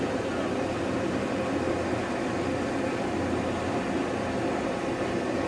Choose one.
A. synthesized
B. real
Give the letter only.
B